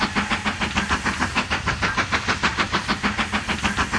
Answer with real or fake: real